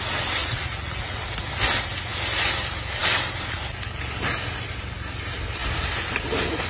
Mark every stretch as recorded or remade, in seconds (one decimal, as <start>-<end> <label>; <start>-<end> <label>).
0.0-0.4 recorded; 0.4-1.2 remade; 1.2-6.7 recorded